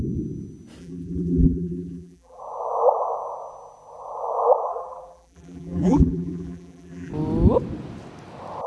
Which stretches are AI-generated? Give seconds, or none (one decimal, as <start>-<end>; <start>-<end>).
0.8-2.4; 4.7-7.1